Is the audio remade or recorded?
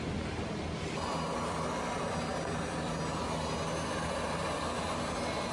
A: recorded